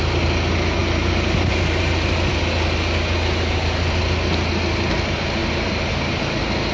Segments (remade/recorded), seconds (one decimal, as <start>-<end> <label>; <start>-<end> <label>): 0.0-0.8 recorded; 0.8-2.4 remade; 2.4-5.4 recorded; 5.4-5.9 remade; 5.9-6.7 recorded